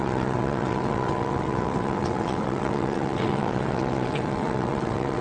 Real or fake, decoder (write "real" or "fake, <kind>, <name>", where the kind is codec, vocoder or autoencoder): fake, vocoder, WaveNeXt